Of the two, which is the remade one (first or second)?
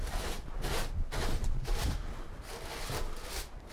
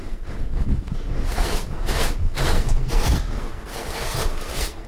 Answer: second